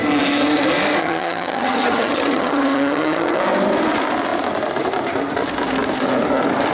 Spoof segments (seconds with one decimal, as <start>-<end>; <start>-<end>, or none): 1.0-3.4